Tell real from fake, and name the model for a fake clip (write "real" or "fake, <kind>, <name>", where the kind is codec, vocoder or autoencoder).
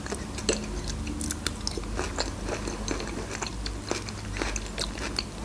real